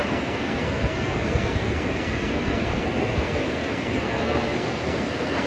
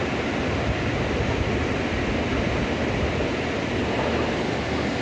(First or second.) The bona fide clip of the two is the second